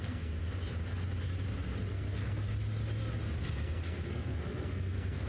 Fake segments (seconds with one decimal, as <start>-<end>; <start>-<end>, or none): 0.0-0.4; 1.9-2.5; 3.4-5.3